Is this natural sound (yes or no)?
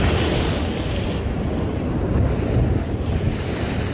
yes